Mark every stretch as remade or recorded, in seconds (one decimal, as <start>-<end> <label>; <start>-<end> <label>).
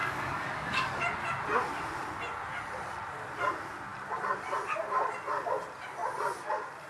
0.0-1.0 remade; 1.0-6.9 recorded